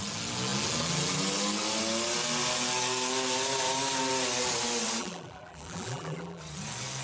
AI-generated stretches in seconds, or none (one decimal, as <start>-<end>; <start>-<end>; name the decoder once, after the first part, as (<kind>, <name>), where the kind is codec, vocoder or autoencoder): 5.0-6.4 (vocoder, BigVGAN v2)